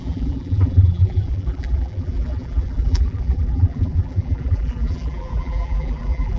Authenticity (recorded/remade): remade